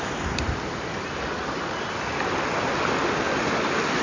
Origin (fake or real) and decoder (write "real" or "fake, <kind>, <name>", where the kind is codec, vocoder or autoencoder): real